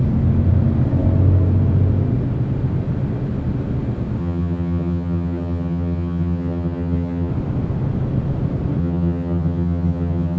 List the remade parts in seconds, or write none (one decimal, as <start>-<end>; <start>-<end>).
4.2-7.3; 8.8-10.4